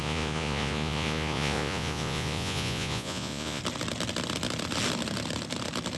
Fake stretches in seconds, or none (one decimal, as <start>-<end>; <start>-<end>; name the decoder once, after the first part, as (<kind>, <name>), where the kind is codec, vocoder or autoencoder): 0.0-3.6 (vocoder, Vocos)